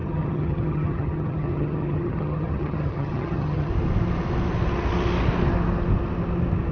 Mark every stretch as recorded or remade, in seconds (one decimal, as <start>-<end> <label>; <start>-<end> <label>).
0.0-3.7 remade; 3.7-6.7 recorded